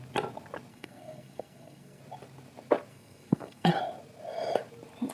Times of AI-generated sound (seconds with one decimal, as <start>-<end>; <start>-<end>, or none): 0.7-2.0; 2.9-3.7